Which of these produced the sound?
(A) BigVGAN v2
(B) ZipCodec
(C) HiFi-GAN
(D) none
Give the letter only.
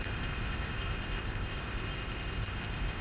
B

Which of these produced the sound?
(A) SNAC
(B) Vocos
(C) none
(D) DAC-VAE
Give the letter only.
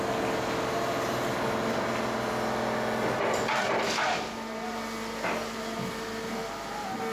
C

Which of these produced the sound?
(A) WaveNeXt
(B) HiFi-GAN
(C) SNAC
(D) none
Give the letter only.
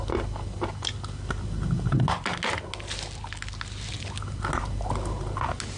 D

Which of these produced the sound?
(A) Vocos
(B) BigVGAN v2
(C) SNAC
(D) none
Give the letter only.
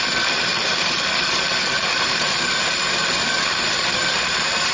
B